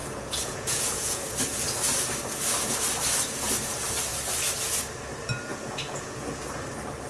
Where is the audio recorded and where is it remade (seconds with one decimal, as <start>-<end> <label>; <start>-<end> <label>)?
0.0-1.4 remade; 1.4-5.5 recorded; 5.5-6.5 remade; 6.5-7.1 recorded